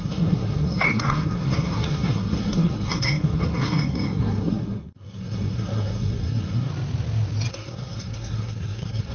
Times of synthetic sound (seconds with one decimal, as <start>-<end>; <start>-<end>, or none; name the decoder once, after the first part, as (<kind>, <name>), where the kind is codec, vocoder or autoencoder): 0.0-6.7 (codec, SNAC); 7.5-9.1